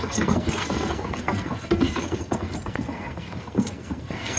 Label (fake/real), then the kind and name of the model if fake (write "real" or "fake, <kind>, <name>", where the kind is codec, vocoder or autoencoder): fake, codec, SNAC